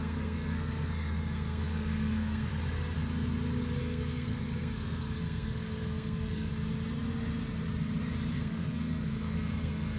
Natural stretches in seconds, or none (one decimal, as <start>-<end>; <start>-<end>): 2.5-3.8; 6.5-8.3